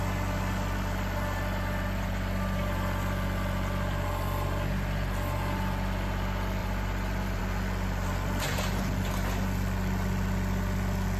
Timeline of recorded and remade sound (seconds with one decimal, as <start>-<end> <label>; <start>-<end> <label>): 0.0-6.6 recorded; 6.6-7.4 remade; 7.4-11.2 recorded